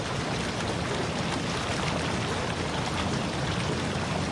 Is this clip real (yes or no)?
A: yes